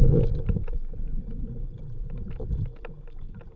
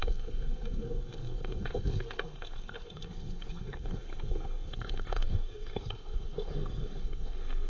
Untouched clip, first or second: first